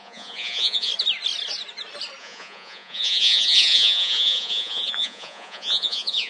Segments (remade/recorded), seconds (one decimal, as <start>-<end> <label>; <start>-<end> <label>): 0.0-0.9 remade; 0.9-2.2 recorded; 2.2-6.3 remade